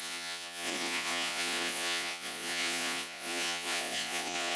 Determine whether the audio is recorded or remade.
remade